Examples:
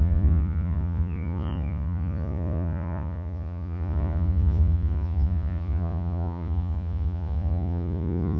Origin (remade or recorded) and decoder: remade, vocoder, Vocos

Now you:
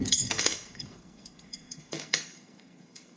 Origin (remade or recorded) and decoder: remade, codec, SNAC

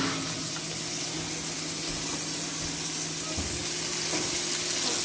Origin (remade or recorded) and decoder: recorded